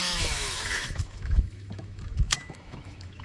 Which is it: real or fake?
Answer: fake